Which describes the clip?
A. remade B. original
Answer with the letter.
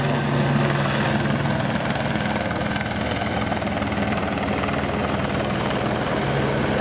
B